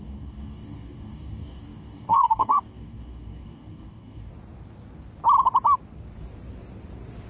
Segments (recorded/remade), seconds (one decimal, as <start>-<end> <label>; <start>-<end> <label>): 0.0-4.3 remade; 4.3-7.3 recorded